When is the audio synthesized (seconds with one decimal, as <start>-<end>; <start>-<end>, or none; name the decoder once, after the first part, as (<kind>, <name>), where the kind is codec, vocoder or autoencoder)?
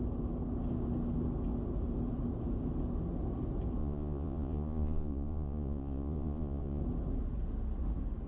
3.8-6.8 (vocoder, Vocos)